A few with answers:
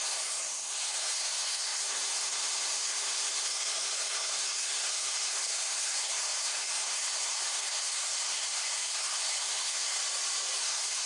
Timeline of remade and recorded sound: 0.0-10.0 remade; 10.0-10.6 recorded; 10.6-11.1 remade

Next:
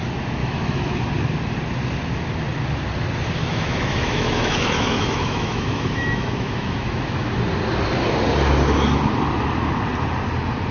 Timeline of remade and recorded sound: 0.0-0.4 recorded; 0.4-1.0 remade; 1.0-3.4 recorded; 3.4-7.4 remade; 7.4-10.7 recorded

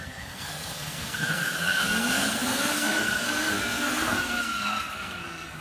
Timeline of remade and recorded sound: 0.0-5.6 remade

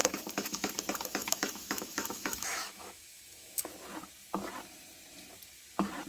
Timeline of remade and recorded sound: 0.0-0.7 remade; 0.7-1.2 recorded; 1.2-3.7 remade; 3.7-6.1 recorded

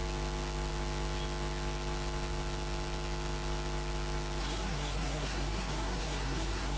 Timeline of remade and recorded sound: 0.0-4.4 recorded; 4.4-6.8 remade